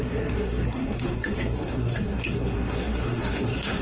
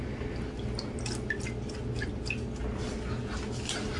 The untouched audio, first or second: second